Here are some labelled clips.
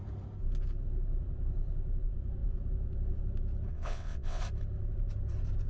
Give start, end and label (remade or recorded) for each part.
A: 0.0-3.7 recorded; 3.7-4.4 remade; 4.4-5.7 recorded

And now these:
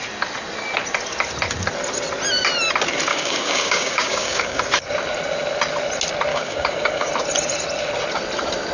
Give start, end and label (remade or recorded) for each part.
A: 0.0-3.1 recorded; 3.1-4.6 remade; 4.6-6.3 recorded; 6.3-7.1 remade; 7.1-8.7 recorded

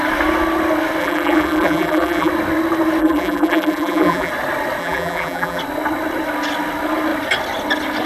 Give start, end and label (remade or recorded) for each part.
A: 0.0-1.0 recorded; 1.0-2.3 remade; 2.3-3.0 recorded; 3.0-4.3 remade; 4.3-4.8 recorded; 4.8-5.6 remade; 5.6-8.1 recorded

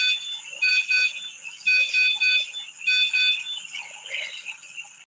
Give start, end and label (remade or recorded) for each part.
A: 0.0-5.1 recorded

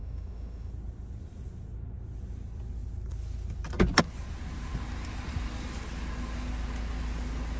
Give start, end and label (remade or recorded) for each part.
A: 0.0-0.7 remade; 0.7-7.6 recorded

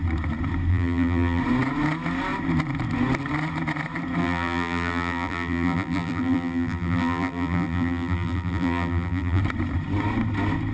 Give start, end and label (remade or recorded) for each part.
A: 0.0-0.7 recorded; 0.7-1.4 remade; 1.4-4.2 recorded; 4.2-9.4 remade; 9.4-10.7 recorded